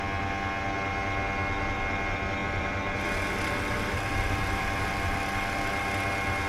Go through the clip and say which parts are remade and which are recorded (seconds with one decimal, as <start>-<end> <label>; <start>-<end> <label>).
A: 0.0-2.4 recorded; 2.4-5.9 remade; 5.9-6.5 recorded